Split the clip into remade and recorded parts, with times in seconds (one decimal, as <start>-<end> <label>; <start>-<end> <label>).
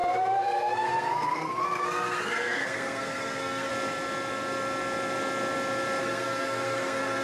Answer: 0.0-3.7 remade; 3.7-6.0 recorded; 6.0-7.2 remade